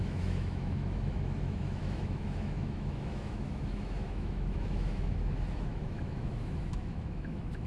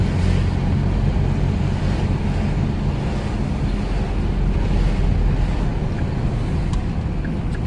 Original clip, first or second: second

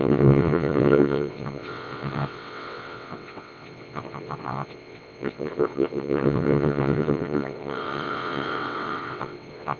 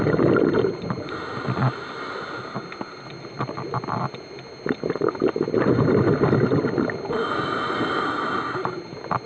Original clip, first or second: second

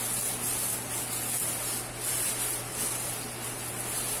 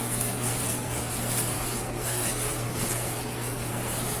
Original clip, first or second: first